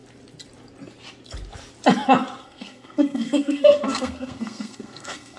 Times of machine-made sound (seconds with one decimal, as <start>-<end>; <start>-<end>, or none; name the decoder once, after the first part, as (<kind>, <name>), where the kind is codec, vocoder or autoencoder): 2.4-5.4 (codec, SNAC)